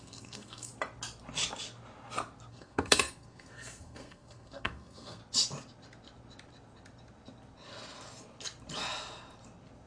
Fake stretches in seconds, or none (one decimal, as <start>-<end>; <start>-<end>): 0.0-0.7; 2.5-5.2